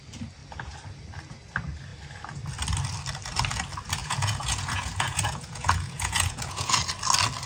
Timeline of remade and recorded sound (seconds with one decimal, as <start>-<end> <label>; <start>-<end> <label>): 0.0-4.0 recorded; 4.0-6.9 remade; 6.9-7.5 recorded